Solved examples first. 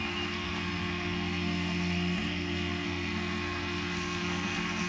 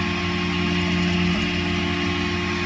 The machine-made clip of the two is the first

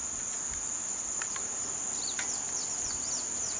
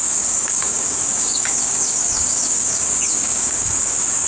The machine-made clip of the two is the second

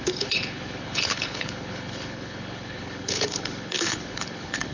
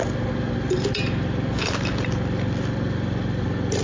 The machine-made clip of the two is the first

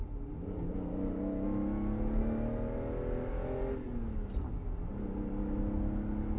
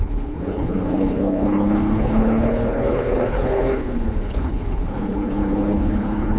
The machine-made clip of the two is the second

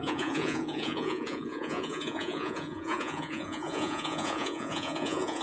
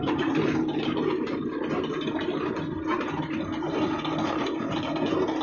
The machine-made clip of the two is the first